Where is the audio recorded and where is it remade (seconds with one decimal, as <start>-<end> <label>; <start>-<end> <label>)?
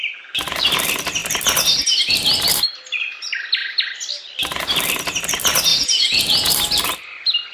0.0-5.7 recorded; 5.7-6.5 remade; 6.5-7.5 recorded